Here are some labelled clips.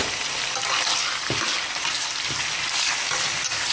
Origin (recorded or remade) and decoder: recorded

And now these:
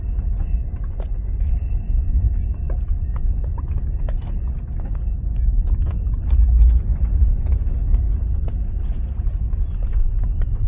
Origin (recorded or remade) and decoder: recorded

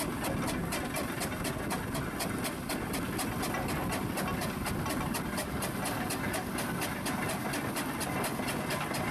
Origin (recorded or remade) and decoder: recorded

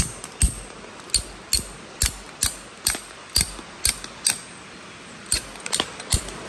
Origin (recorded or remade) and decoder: recorded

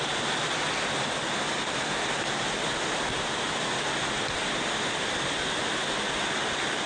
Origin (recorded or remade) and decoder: recorded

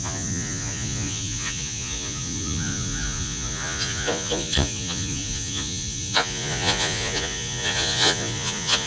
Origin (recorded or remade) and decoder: remade, vocoder, Vocos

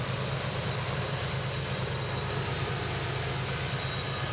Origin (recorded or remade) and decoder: recorded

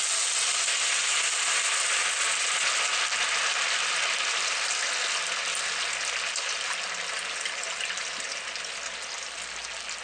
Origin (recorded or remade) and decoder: recorded